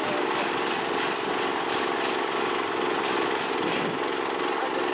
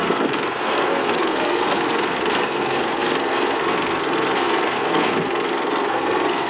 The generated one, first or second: second